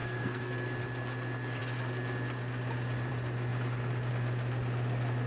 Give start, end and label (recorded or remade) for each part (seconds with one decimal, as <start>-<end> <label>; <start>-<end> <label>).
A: 0.0-0.5 remade; 0.5-5.3 recorded